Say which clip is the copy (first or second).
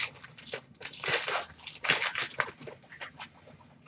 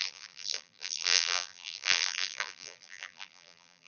second